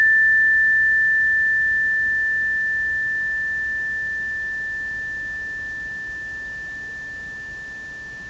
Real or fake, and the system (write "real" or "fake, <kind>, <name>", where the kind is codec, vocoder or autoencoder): real